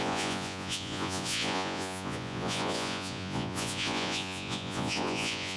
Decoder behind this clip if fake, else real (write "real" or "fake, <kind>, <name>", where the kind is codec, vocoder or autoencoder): fake, vocoder, Vocos